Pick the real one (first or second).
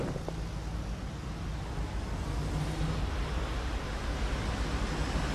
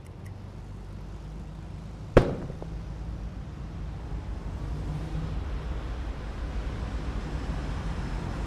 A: first